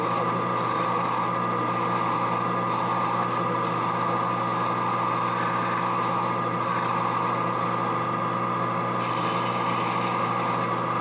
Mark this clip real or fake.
real